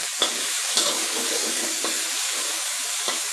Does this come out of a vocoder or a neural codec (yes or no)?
yes